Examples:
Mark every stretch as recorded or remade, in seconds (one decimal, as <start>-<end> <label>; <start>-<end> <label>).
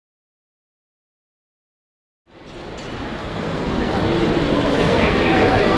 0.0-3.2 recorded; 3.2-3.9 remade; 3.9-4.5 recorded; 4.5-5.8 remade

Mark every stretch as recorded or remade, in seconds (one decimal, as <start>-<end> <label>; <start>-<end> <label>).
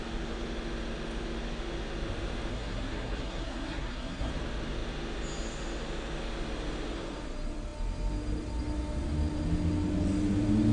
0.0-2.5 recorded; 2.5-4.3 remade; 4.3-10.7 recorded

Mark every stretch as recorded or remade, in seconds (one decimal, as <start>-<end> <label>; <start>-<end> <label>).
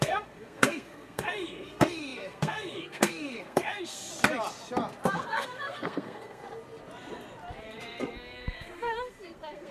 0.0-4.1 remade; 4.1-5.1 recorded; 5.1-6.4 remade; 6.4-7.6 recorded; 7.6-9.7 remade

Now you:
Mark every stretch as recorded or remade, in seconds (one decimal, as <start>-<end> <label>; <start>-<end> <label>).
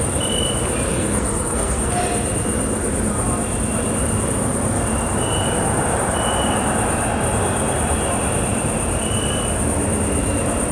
0.0-0.9 recorded; 0.9-1.9 remade; 1.9-10.7 recorded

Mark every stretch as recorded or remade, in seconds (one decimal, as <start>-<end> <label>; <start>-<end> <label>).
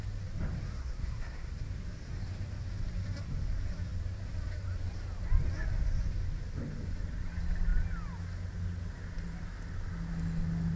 0.0-0.8 recorded; 0.8-1.5 remade; 1.5-10.8 recorded